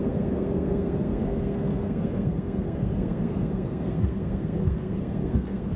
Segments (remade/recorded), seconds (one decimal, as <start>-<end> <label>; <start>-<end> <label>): 0.0-5.8 remade